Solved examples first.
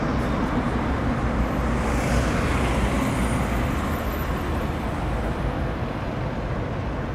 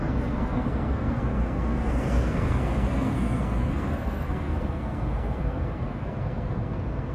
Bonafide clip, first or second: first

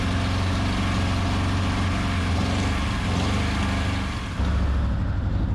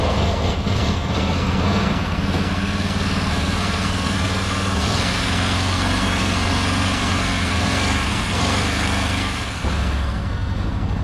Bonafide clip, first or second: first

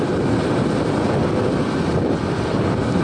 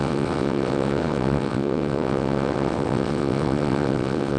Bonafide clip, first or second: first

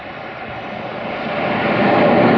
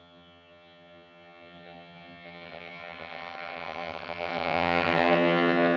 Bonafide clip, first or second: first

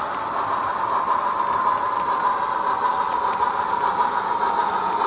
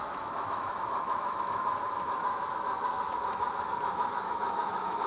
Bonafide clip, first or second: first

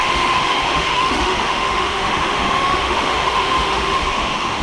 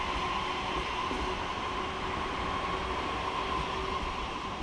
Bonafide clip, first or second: second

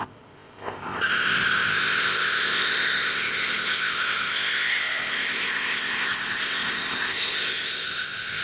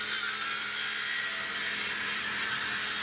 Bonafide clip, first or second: second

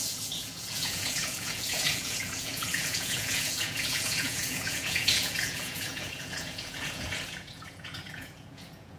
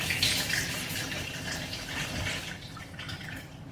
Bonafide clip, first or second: second